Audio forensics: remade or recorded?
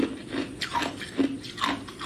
recorded